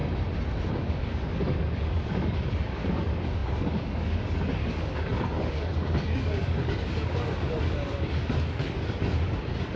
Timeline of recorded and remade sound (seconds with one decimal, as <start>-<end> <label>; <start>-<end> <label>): 0.0-0.7 recorded; 0.7-9.8 remade